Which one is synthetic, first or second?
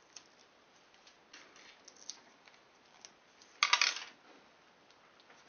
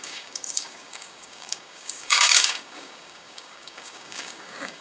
second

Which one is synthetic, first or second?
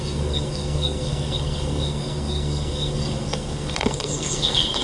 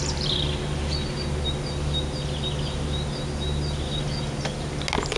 first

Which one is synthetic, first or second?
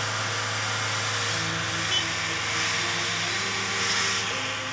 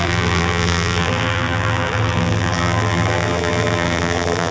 second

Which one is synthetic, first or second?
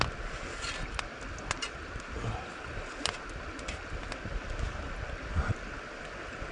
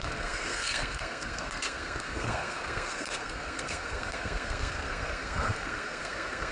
second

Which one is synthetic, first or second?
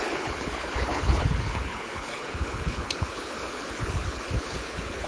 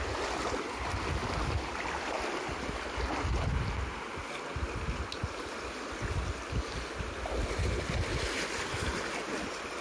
first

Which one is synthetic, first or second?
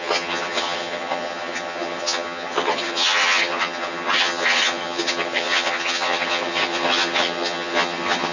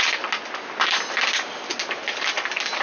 first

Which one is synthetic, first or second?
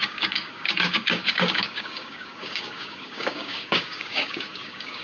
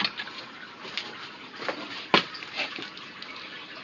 first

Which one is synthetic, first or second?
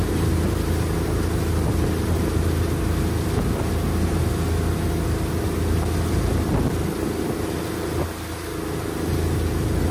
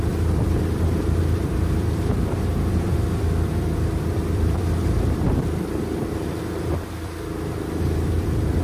second